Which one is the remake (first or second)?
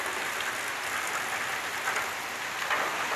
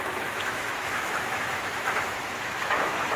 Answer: second